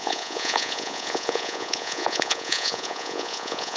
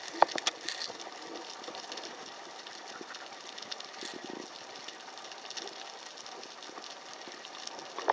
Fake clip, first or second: first